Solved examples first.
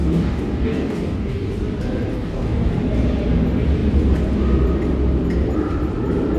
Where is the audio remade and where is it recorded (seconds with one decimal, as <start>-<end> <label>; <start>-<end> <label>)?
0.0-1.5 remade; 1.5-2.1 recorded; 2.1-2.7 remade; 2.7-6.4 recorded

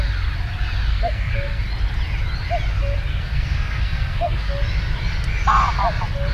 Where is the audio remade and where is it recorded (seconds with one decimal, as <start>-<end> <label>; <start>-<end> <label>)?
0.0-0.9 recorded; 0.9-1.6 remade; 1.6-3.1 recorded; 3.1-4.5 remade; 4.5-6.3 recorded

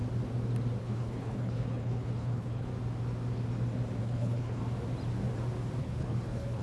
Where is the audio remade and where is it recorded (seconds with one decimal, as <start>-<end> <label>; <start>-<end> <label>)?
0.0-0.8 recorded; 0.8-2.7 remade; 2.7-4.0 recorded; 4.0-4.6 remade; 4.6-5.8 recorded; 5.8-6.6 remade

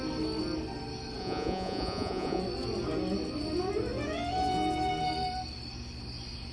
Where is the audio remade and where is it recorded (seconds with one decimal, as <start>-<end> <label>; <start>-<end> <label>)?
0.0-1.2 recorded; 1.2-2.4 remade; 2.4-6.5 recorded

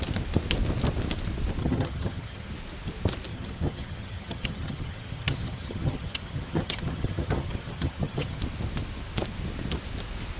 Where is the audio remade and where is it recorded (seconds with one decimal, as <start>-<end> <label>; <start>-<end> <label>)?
0.0-1.6 recorded; 1.6-2.5 remade; 2.5-3.3 recorded; 3.3-8.4 remade; 8.4-10.4 recorded

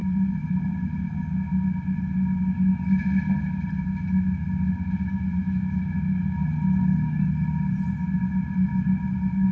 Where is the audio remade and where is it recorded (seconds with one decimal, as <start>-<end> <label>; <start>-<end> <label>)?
0.0-1.1 remade; 1.1-9.5 recorded